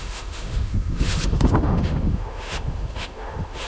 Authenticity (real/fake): fake